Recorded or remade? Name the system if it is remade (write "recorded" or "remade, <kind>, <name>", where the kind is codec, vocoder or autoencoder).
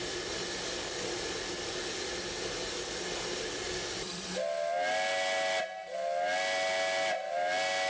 recorded